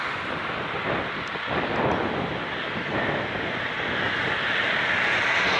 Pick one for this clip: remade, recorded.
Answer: recorded